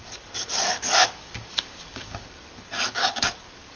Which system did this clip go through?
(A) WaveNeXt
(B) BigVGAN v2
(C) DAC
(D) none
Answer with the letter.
C